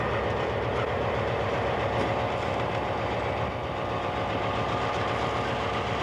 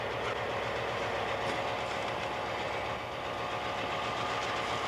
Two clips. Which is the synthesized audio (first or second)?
first